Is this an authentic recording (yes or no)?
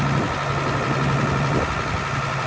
yes